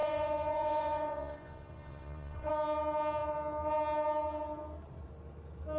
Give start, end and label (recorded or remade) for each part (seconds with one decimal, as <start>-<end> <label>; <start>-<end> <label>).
0.0-2.5 remade; 2.5-5.8 recorded